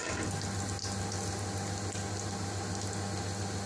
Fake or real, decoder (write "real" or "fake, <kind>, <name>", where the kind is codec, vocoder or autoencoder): real